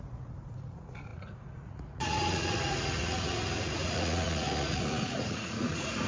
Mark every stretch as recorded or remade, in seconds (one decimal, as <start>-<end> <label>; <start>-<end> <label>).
0.0-6.1 remade